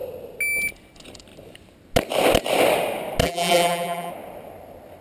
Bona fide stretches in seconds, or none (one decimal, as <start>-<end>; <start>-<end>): 0.0-3.2; 4.1-5.0